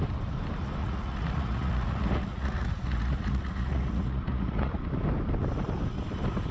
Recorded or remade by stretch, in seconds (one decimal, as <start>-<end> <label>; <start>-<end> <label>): 0.0-0.8 recorded; 0.8-4.7 remade; 4.7-6.5 recorded